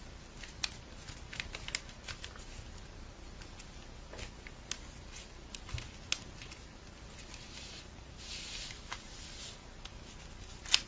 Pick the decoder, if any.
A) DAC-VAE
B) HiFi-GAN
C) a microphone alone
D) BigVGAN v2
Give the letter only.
C